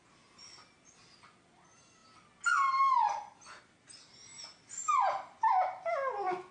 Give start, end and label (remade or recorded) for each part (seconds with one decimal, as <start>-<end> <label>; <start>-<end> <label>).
0.0-6.5 recorded